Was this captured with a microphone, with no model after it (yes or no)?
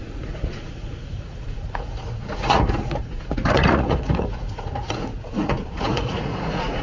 no